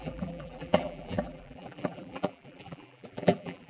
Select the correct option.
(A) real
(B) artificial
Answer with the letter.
B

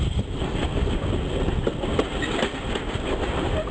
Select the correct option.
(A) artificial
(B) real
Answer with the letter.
B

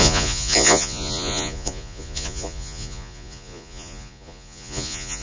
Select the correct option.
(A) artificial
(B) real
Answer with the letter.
A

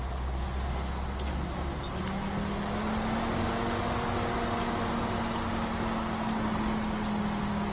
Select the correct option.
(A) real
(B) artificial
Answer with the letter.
A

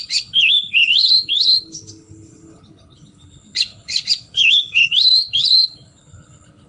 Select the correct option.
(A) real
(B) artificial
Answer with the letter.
B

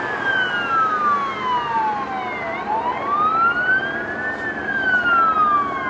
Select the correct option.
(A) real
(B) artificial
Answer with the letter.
A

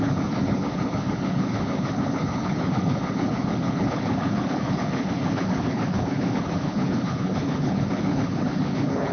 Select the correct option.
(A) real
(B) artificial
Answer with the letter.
B